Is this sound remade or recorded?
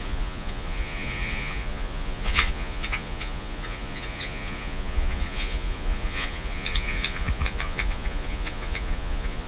remade